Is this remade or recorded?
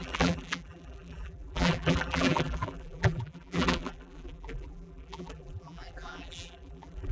remade